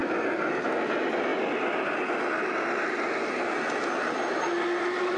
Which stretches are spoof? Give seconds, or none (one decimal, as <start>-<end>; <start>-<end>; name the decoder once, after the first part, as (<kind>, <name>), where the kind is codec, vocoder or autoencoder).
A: none